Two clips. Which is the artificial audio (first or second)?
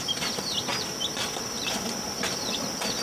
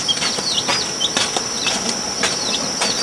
first